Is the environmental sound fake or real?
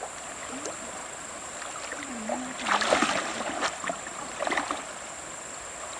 real